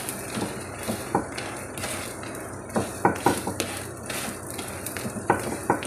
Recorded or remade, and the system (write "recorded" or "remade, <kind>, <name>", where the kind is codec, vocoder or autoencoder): recorded